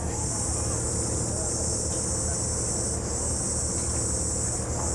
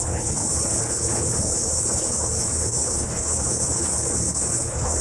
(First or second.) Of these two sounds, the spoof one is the second